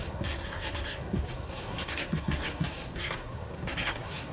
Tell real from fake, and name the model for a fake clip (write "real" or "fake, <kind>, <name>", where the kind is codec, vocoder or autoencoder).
fake, codec, SNAC